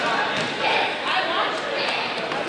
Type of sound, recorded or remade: recorded